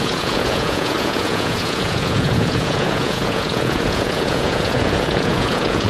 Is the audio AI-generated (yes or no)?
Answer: yes